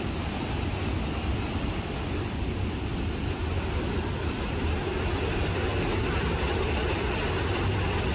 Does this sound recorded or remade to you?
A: recorded